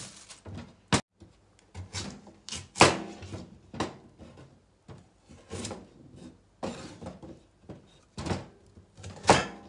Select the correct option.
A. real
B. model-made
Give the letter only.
A